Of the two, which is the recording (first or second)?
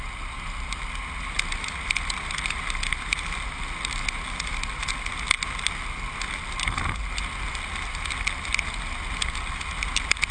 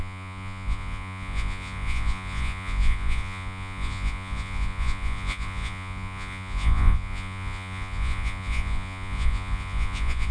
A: first